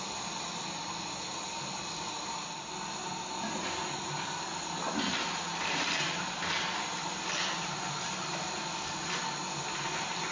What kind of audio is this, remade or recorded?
recorded